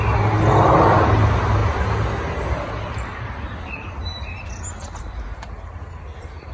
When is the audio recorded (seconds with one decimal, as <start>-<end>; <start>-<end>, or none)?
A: 0.0-6.5